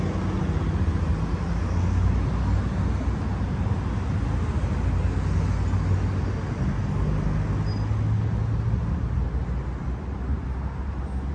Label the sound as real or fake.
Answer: real